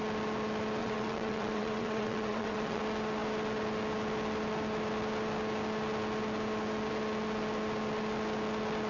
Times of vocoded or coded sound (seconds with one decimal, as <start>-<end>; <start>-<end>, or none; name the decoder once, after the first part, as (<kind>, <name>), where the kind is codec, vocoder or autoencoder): 0.8-2.8 (vocoder, WaveNeXt)